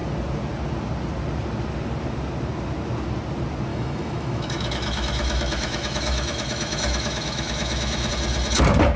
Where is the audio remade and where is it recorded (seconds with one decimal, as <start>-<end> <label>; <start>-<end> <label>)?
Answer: 0.0-3.7 recorded; 3.7-8.1 remade; 8.1-9.0 recorded

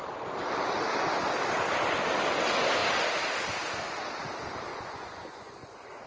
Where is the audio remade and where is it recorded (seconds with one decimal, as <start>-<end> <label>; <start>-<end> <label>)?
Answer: 0.0-4.7 recorded; 4.7-6.1 remade

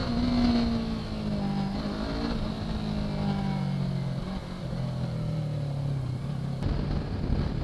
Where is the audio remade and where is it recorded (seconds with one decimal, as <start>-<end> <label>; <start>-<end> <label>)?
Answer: 0.0-7.6 recorded

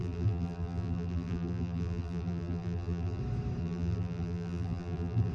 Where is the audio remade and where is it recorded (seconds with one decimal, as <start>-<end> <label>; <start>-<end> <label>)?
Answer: 0.0-3.2 remade; 3.2-3.6 recorded; 3.6-5.3 remade

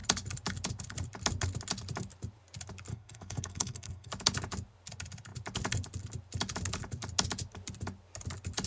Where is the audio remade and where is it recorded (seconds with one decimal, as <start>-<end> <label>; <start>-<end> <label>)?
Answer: 0.0-2.9 recorded; 2.9-4.1 remade; 4.1-8.7 recorded

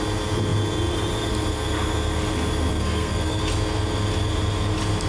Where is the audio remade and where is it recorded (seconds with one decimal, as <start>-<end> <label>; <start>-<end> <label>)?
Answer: 0.0-2.7 recorded; 2.7-3.4 remade; 3.4-5.1 recorded

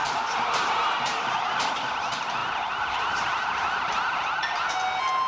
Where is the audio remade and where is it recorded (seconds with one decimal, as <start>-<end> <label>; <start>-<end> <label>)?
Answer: 0.0-1.9 remade; 1.9-2.4 recorded; 2.4-4.7 remade; 4.7-5.3 recorded